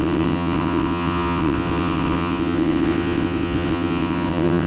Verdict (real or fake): fake